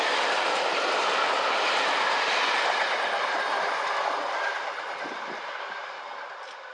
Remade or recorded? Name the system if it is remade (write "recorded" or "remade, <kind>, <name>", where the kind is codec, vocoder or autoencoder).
recorded